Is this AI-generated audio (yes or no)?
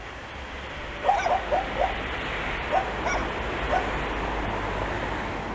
no